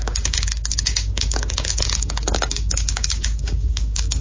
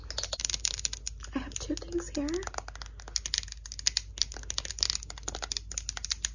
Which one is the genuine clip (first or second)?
second